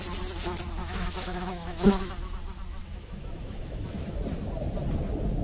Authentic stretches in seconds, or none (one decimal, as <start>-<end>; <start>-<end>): 0.0-0.8; 2.1-2.8; 4.0-5.4